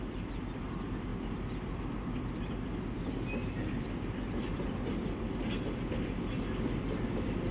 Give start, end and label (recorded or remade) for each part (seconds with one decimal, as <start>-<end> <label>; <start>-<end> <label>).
0.0-7.5 recorded